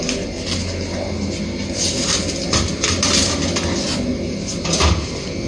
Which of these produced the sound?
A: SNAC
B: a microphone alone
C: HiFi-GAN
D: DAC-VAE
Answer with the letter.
B